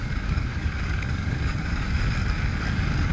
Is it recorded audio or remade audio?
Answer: remade